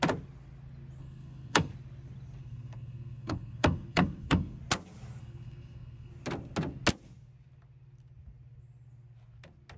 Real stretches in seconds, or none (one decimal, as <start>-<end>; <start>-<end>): 0.0-1.0; 1.7-2.4; 4.6-5.2; 6.1-9.8